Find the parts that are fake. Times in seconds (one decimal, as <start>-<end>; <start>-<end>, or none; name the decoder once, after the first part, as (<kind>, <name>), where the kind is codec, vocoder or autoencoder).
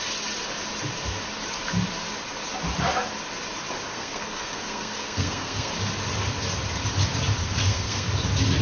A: 3.9-5.7 (codec, SNAC); 7.4-8.1